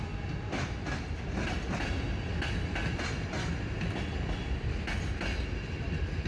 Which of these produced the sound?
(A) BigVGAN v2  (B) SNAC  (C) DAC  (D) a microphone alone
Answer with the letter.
D